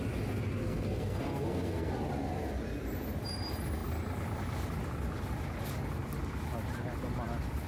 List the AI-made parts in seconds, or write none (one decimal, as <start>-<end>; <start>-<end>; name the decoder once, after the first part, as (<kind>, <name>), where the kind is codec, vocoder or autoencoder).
0.6-1.9 (codec, SNAC)